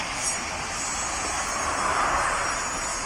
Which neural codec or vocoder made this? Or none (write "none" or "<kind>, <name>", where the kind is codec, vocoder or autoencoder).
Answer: none